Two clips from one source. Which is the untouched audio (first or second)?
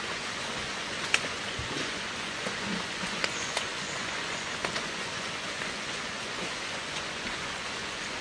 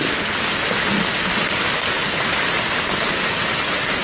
second